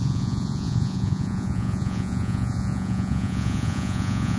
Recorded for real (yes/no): no